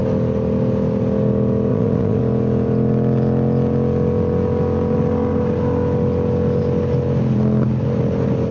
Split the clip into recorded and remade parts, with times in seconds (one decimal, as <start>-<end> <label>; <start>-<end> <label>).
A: 0.0-1.7 recorded; 1.7-2.2 remade; 2.2-8.5 recorded